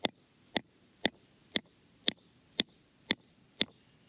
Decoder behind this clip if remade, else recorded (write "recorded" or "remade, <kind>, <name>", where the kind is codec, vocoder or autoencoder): recorded